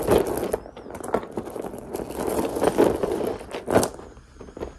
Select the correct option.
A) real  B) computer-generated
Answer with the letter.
A